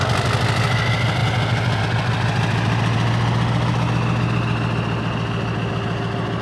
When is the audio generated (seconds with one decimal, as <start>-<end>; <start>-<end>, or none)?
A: none